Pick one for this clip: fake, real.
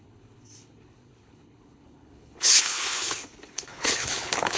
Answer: fake